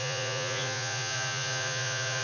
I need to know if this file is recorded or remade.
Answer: remade